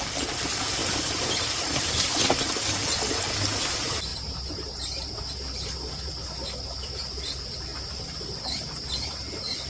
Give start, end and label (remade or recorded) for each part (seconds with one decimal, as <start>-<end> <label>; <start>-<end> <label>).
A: 0.0-0.8 recorded; 0.8-2.0 remade; 2.0-4.1 recorded; 4.1-6.1 remade; 6.1-7.7 recorded; 7.7-9.7 remade